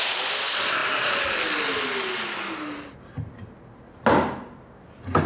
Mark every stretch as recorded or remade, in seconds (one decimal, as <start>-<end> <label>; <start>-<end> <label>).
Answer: 0.0-5.3 recorded